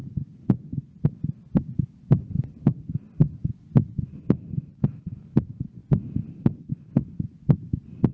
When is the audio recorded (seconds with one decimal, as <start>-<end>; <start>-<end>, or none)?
0.0-1.1; 3.4-3.9; 5.8-6.7